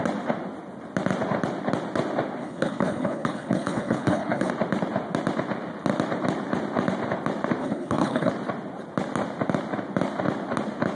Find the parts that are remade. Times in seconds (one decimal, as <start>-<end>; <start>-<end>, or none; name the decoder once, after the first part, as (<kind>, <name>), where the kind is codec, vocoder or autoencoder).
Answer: 2.4-4.5 (codec, HILCodec); 7.6-8.3